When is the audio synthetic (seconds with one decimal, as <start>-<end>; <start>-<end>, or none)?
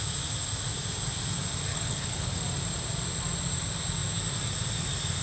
1.7-2.4